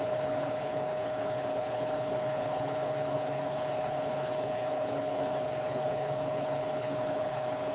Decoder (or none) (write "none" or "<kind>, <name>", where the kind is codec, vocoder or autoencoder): codec, HILCodec